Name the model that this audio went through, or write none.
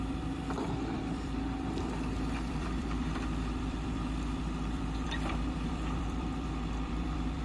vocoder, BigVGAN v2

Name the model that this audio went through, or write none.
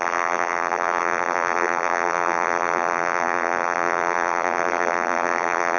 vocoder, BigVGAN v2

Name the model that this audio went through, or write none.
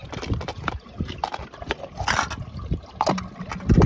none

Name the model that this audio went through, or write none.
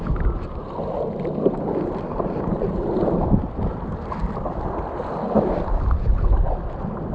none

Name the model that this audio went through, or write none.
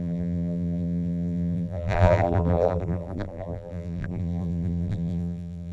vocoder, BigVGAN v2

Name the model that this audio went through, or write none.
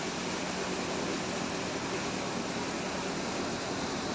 none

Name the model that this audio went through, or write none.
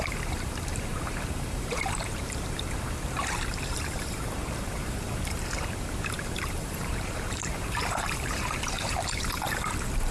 vocoder, BigVGAN v2